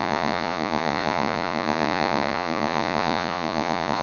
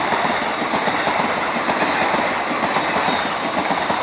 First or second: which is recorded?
second